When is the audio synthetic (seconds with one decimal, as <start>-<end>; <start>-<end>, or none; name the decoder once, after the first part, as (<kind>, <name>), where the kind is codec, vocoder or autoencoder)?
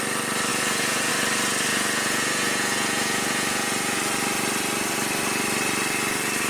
0.5-1.1 (vocoder, Vocos); 1.7-4.0